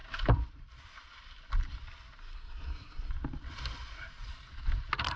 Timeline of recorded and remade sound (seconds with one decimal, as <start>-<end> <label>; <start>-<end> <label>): 0.0-2.2 recorded; 2.2-3.1 remade; 3.1-5.2 recorded